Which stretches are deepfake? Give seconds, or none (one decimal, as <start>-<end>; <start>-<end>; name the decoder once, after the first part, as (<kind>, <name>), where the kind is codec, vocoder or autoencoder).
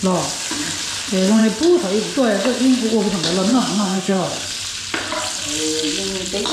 3.5-4.5 (codec, SNAC)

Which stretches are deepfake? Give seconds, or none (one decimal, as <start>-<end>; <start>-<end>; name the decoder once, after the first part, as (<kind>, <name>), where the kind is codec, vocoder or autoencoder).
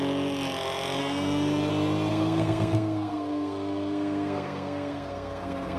1.0-1.7 (codec, SNAC); 2.1-5.8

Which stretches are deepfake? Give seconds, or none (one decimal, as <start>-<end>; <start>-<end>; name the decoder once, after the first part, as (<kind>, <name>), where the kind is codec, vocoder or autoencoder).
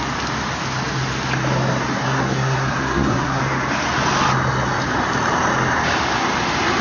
2.0-3.4 (codec, SNAC)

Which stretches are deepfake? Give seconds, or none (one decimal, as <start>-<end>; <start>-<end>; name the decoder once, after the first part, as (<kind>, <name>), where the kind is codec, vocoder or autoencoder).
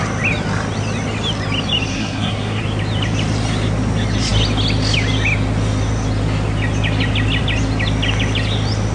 1.9-2.6 (codec, SNAC)